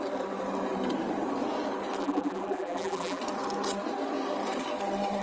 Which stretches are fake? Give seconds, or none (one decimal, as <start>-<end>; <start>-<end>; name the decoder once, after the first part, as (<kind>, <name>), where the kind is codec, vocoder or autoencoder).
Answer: 2.0-3.2 (vocoder, BigVGAN v2)